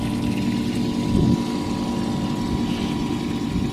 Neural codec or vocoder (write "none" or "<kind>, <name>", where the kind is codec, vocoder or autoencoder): none